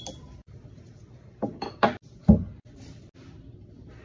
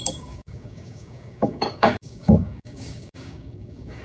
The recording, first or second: first